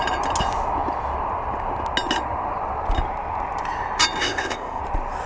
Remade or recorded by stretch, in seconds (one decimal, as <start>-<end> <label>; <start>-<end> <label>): 0.0-4.2 recorded; 4.2-4.8 remade; 4.8-5.3 recorded

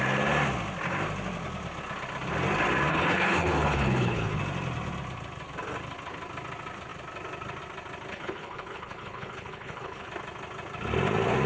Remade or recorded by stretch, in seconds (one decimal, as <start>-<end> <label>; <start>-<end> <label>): 0.0-2.9 recorded; 2.9-4.4 remade; 4.4-8.1 recorded; 8.1-10.1 remade; 10.1-11.5 recorded

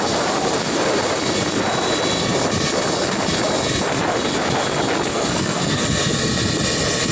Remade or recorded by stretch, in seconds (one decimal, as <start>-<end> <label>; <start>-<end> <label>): 0.0-5.1 recorded; 5.1-5.8 remade; 5.8-7.1 recorded

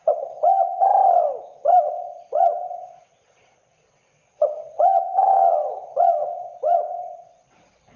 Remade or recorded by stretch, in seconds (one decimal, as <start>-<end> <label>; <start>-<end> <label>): 0.0-0.9 remade; 0.9-1.8 recorded; 1.8-8.0 remade

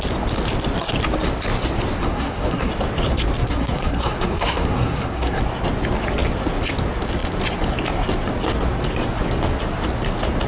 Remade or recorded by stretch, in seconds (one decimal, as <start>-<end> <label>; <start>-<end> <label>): 0.0-2.0 recorded; 2.0-2.7 remade; 2.7-3.4 recorded; 3.4-5.4 remade; 5.4-10.5 recorded

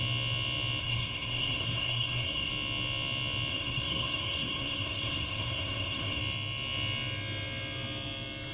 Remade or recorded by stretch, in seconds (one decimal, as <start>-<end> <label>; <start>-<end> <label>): 0.0-0.8 recorded; 0.8-2.5 remade; 2.5-3.5 recorded; 3.5-6.2 remade; 6.2-8.5 recorded

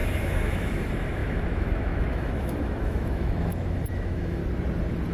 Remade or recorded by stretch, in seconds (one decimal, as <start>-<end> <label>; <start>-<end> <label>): 0.0-4.4 remade; 4.4-5.1 recorded

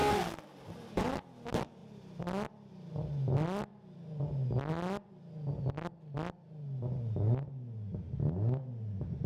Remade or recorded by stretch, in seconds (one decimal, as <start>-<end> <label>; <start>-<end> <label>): 0.0-9.3 recorded